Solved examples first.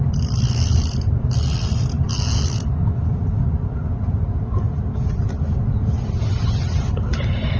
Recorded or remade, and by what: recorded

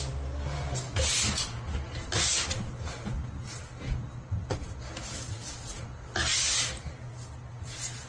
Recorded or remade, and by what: recorded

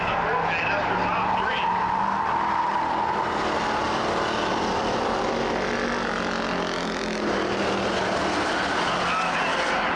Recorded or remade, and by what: recorded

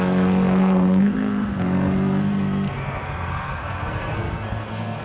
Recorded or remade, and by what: remade, codec, SNAC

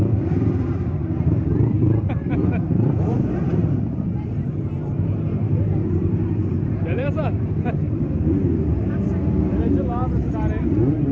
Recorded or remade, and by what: remade, vocoder, BigVGAN v2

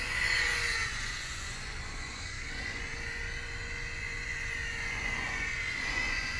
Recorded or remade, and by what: remade, vocoder, Vocos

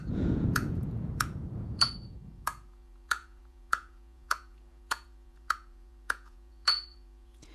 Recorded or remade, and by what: remade, vocoder, Vocos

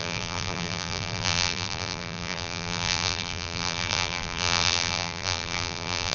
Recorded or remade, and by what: remade, vocoder, BigVGAN v2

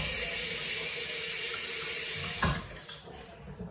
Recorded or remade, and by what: recorded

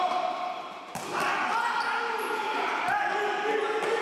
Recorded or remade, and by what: recorded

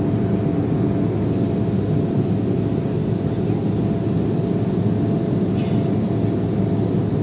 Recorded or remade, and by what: recorded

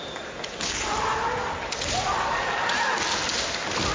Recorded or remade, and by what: recorded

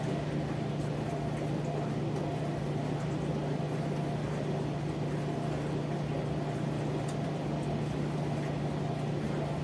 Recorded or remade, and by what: recorded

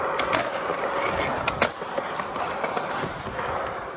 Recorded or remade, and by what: recorded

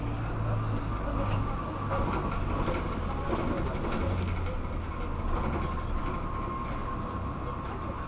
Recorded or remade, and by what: recorded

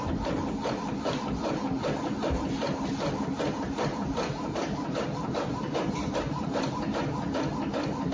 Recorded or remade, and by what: recorded